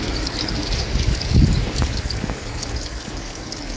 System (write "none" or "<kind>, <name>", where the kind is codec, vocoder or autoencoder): codec, DAC